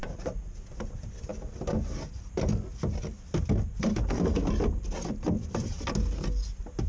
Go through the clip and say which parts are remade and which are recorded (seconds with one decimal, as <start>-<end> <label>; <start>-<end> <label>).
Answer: 0.0-0.6 remade; 0.6-6.9 recorded